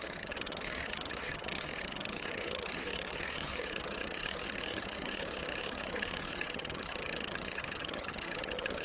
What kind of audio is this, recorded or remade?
remade